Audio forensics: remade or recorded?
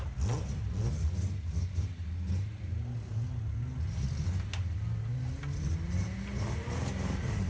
recorded